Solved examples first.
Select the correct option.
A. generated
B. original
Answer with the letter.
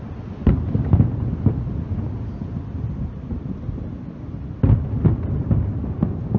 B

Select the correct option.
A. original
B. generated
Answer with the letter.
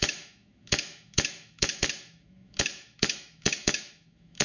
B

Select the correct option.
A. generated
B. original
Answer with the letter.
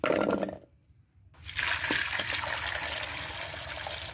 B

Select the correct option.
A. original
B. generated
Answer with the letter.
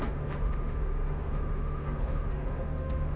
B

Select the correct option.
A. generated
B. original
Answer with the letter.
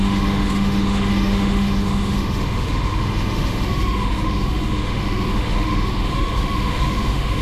A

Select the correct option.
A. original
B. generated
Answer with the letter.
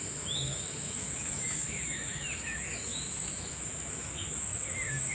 B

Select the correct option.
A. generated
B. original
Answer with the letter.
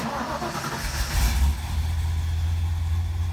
B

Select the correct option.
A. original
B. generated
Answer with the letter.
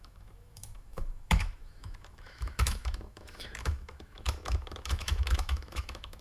B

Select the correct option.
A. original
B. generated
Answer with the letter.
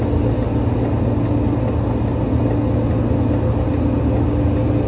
A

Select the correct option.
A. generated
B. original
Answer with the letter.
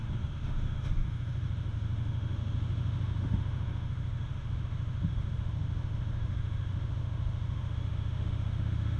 A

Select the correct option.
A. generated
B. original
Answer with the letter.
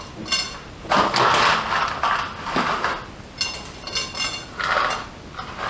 B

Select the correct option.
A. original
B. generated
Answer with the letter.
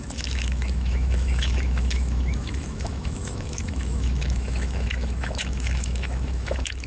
B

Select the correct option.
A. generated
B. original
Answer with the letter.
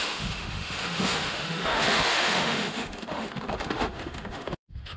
A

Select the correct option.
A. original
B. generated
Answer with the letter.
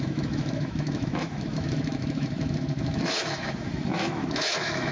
B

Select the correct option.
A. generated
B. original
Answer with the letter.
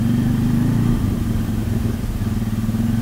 B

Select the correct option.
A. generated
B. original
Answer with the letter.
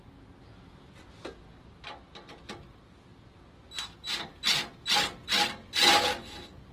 B